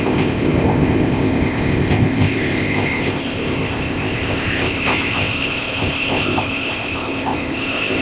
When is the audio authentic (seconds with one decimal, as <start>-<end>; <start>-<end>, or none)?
none